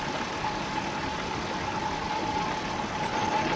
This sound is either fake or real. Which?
real